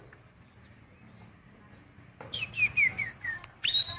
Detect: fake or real real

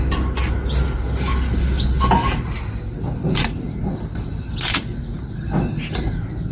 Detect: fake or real real